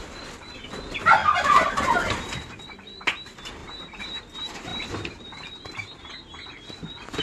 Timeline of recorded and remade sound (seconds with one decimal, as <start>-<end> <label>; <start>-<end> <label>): 0.0-3.6 recorded; 3.6-4.2 remade; 4.2-7.2 recorded